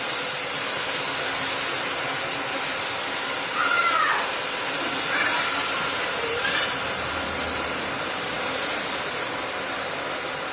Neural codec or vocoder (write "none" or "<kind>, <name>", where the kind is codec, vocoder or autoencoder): none